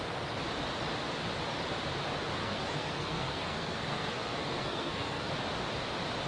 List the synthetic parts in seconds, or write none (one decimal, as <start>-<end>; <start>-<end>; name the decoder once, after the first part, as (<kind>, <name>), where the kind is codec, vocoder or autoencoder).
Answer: 2.4-5.3 (codec, SNAC)